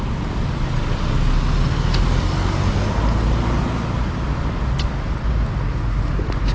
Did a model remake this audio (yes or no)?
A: no